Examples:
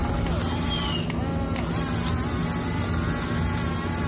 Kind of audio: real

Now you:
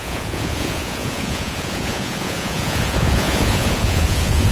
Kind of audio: fake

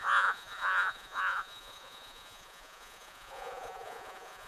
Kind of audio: fake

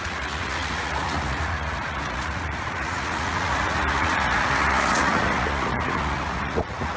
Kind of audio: fake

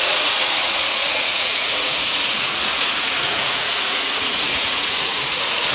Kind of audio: fake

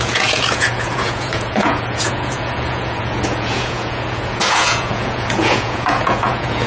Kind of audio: fake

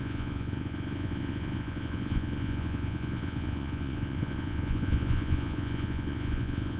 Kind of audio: fake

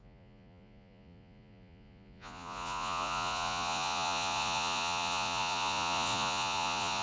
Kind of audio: fake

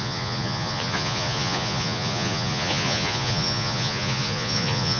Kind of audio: fake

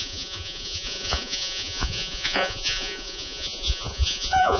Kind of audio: fake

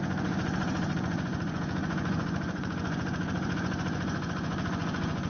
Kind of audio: fake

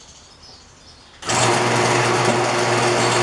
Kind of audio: real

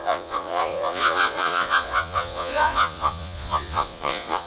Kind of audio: fake